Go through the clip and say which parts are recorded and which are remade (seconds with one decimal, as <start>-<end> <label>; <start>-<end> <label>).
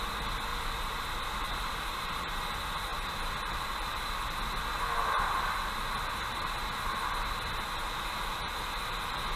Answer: 0.0-0.5 recorded; 0.5-2.1 remade; 2.1-9.4 recorded